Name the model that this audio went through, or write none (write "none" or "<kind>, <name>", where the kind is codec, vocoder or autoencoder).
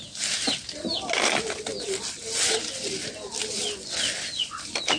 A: none